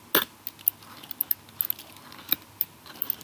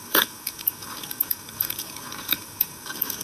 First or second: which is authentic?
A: first